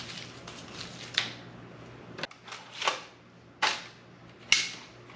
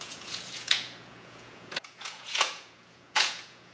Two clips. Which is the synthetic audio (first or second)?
second